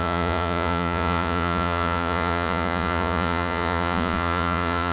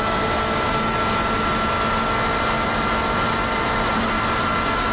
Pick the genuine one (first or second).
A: second